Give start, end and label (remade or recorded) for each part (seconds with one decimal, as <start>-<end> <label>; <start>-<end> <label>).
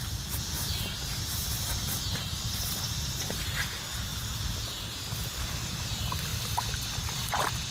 0.0-7.7 recorded